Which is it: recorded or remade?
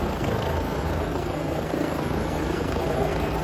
remade